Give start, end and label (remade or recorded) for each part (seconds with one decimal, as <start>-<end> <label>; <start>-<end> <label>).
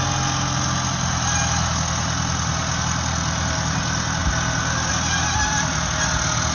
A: 0.0-6.5 recorded